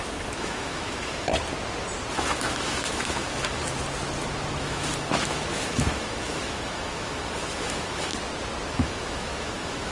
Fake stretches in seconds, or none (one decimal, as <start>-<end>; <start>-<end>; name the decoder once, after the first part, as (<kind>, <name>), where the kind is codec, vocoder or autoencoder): 0.0-1.3 (autoencoder, DAC-VAE); 2.1-3.6; 4.6-8.1; 8.7-9.9